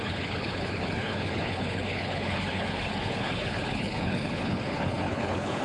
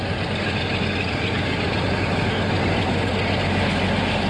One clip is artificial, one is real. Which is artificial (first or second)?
first